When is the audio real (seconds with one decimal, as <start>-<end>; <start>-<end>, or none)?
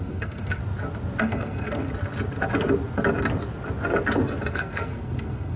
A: 0.6-1.2; 1.9-4.5